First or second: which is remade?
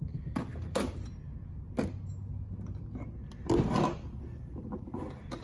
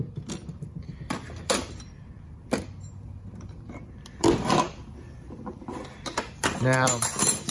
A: second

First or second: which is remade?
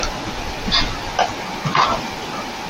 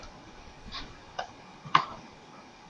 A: second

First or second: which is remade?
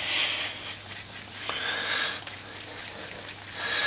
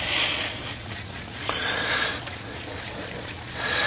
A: second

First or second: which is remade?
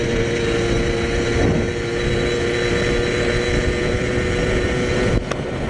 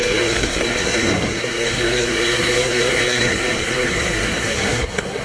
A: second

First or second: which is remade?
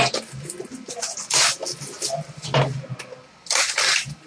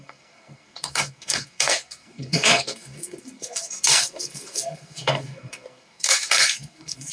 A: second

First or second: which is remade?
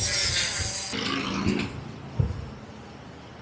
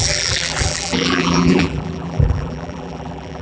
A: second